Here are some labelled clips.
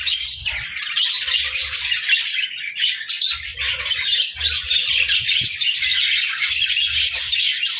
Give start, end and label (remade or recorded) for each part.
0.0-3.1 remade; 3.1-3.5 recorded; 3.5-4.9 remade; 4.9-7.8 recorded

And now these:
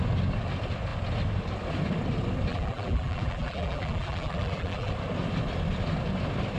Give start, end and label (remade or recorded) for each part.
0.0-2.5 recorded; 2.5-4.9 remade; 4.9-6.6 recorded

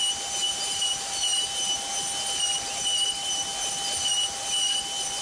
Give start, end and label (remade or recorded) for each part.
0.0-0.4 recorded; 0.4-1.7 remade; 1.7-5.2 recorded

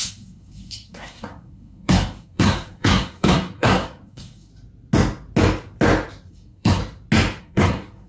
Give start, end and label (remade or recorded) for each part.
0.0-4.5 remade; 4.5-6.3 recorded; 6.3-6.8 remade; 6.8-7.4 recorded; 7.4-8.1 remade